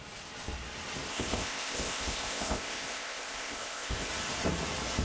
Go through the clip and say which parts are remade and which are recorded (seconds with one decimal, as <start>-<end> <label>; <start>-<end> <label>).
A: 0.0-1.1 recorded; 1.1-4.1 remade; 4.1-5.0 recorded